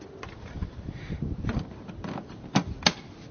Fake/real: real